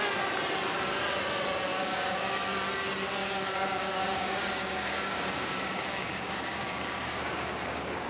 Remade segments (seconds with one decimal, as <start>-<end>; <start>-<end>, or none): 1.7-2.3; 3.2-8.1